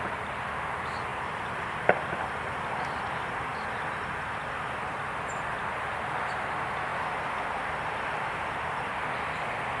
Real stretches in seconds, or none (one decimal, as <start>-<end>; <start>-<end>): 0.0-1.1; 3.0-9.8